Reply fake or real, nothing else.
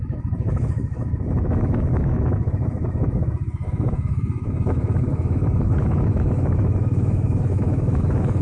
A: fake